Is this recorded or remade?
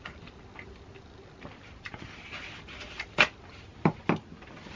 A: recorded